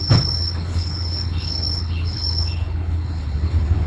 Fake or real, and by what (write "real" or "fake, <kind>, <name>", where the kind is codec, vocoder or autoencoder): fake, codec, HILCodec